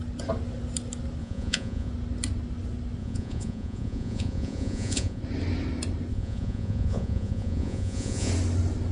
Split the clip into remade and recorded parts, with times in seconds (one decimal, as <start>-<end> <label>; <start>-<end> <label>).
0.0-1.2 recorded; 1.2-1.9 remade; 1.9-3.0 recorded; 3.0-5.2 remade; 5.2-6.1 recorded; 6.1-8.3 remade; 8.3-8.9 recorded

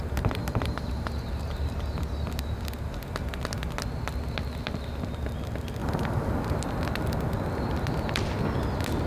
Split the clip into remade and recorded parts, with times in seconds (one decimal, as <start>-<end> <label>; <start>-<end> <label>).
0.0-0.4 recorded; 0.4-1.1 remade; 1.1-5.8 recorded; 5.8-6.3 remade; 6.3-9.1 recorded

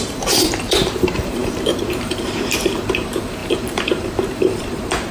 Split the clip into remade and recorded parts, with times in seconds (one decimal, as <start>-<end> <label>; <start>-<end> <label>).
0.0-5.1 remade